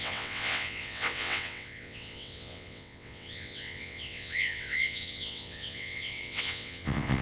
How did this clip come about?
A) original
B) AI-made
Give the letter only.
B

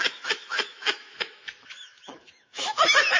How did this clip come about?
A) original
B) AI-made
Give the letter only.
B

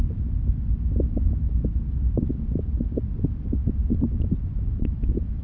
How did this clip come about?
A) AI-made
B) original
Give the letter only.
B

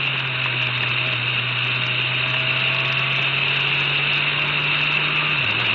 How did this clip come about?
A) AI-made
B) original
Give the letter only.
B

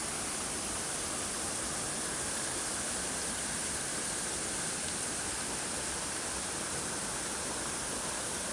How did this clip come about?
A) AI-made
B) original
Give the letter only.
B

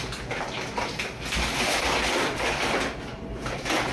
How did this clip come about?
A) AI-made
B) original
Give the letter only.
B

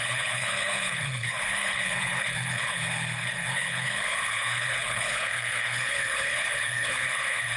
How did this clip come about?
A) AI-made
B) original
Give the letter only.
A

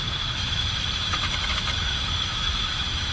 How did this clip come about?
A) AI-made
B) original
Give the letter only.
A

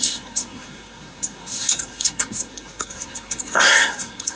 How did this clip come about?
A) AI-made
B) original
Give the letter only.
A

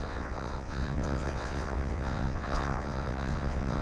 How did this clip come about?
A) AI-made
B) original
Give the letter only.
A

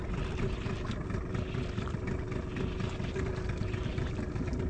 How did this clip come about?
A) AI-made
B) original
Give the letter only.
B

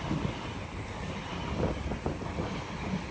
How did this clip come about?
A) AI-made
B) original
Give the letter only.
B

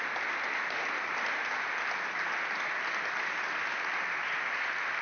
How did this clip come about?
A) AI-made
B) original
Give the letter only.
B